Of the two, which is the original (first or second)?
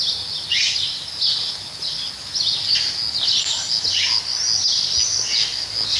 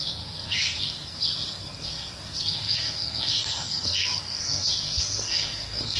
first